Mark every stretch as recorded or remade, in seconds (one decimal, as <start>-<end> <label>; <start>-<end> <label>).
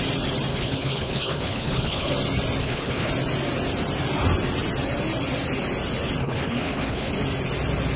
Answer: 0.0-0.5 recorded; 0.5-2.1 remade; 2.1-2.6 recorded; 2.6-3.1 remade; 3.1-6.2 recorded; 6.2-7.1 remade; 7.1-8.0 recorded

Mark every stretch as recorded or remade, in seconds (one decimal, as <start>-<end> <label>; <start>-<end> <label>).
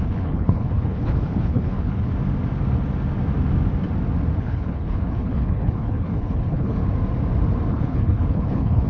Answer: 0.0-2.1 remade; 2.1-4.4 recorded; 4.4-6.8 remade; 6.8-7.7 recorded; 7.7-8.9 remade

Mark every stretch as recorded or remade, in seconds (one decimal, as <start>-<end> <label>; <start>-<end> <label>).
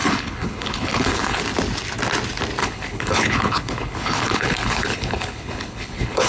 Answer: 0.0-1.4 remade; 1.4-2.6 recorded; 2.6-6.3 remade